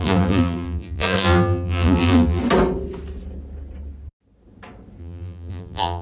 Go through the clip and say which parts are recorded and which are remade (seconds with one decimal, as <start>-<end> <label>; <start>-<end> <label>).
0.0-2.4 remade; 2.4-5.0 recorded; 5.0-6.0 remade